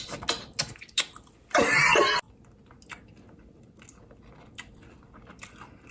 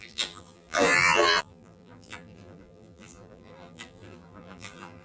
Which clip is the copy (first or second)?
second